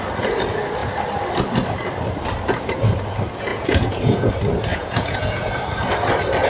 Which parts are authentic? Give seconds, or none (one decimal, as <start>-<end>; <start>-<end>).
0.0-3.5; 4.3-4.7; 5.5-6.5